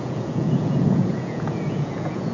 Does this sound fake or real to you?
fake